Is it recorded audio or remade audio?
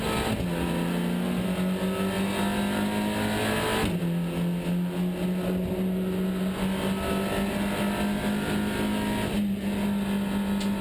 recorded